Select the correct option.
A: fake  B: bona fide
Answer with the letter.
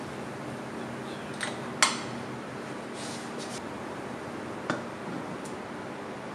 B